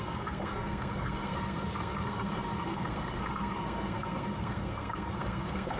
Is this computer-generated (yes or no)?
yes